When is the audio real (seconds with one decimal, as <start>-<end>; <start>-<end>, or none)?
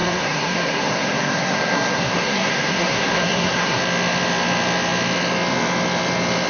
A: 3.8-6.5